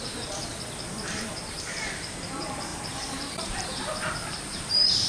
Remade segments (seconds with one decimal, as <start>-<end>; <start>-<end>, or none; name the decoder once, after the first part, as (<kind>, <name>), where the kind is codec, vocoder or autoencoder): 0.0-0.5 (vocoder, BigVGAN v2); 1.3-5.1